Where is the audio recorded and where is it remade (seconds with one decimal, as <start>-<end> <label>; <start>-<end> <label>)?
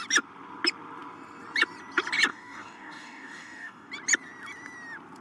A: 0.0-2.3 recorded; 2.3-3.9 remade; 3.9-5.2 recorded